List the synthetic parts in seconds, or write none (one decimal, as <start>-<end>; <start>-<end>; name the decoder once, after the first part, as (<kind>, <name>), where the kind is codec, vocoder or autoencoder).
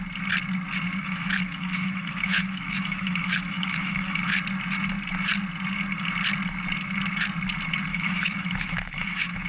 1.0-4.2 (autoencoder, DAC-VAE); 7.9-9.5